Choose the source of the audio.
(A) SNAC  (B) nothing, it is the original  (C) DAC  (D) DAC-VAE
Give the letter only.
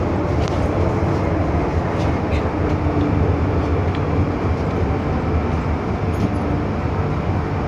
B